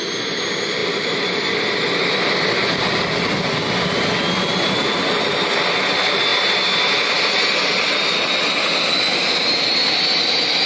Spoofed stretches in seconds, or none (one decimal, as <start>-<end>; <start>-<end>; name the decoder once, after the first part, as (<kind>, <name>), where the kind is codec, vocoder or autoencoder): 0.8-3.4 (vocoder, BigVGAN v2); 4.2-5.3